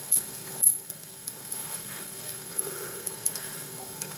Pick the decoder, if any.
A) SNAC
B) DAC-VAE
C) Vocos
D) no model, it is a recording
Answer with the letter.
A